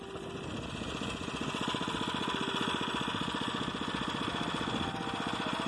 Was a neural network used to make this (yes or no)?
no